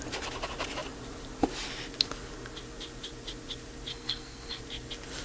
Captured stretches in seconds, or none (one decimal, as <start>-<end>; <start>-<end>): 0.0-3.9; 4.6-5.2